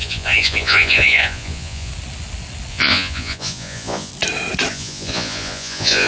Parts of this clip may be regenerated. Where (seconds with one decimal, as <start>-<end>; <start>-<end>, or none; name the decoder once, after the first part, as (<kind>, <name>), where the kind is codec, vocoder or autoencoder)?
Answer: 0.0-1.9 (vocoder, Vocos); 2.7-4.1; 4.7-6.1